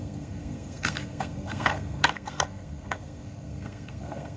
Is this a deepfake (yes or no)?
yes